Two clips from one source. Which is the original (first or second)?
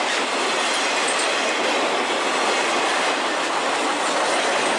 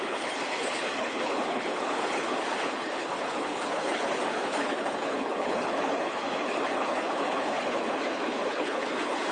first